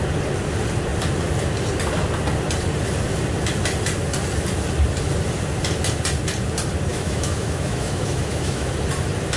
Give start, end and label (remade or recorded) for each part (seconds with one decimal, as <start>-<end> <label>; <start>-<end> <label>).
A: 0.0-6.9 recorded; 6.9-8.7 remade; 8.7-9.4 recorded